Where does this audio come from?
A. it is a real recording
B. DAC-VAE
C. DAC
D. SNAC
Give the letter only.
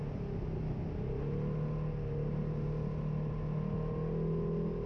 A